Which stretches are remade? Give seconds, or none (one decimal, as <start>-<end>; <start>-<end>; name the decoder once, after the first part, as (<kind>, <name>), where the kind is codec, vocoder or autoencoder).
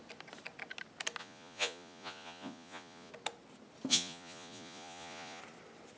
1.2-3.1 (vocoder, Vocos); 3.9-5.4